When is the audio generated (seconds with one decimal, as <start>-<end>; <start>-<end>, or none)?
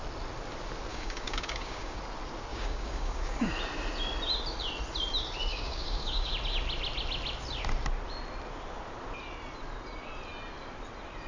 0.9-2.0; 2.5-3.5; 5.5-6.3